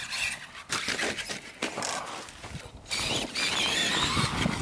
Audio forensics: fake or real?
real